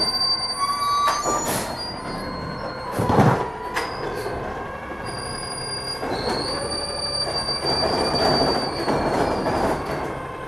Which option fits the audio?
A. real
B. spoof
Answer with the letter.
A